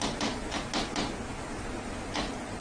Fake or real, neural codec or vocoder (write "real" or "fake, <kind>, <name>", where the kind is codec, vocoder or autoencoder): real